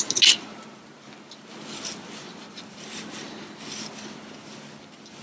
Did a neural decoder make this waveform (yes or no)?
no